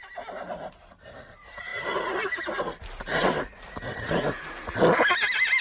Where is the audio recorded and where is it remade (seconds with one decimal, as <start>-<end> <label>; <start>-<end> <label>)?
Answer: 0.0-5.6 recorded